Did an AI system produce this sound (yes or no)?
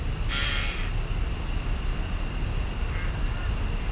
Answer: no